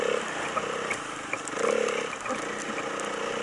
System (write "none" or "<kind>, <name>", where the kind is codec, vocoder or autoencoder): none